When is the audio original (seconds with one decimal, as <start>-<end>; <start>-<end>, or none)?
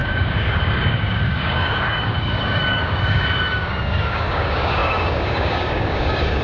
none